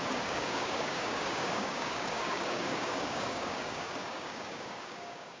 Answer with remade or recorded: remade